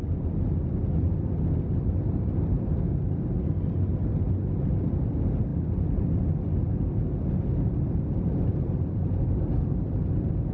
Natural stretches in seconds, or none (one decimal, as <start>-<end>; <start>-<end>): 0.0-10.5